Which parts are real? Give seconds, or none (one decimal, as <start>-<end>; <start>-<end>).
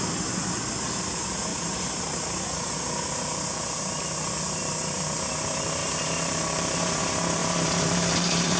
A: 0.0-1.5; 2.3-5.8; 7.0-7.4